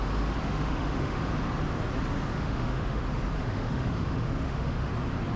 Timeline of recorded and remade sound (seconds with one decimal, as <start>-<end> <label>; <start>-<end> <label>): 0.0-0.4 recorded; 0.4-1.2 remade; 1.2-2.3 recorded; 2.3-3.0 remade; 3.0-3.4 recorded; 3.4-4.9 remade; 4.9-5.4 recorded